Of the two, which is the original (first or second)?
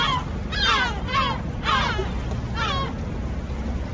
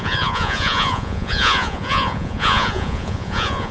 first